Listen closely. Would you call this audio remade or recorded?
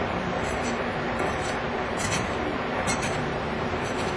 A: remade